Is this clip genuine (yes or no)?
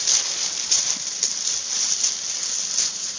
yes